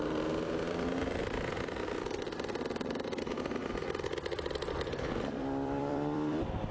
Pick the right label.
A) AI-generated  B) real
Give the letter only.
A